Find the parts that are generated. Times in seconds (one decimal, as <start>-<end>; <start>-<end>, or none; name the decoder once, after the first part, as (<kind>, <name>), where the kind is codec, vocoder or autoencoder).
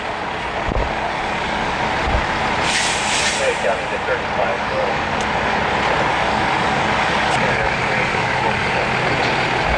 0.8-1.8 (codec, DAC); 4.5-5.6; 6.1-8.8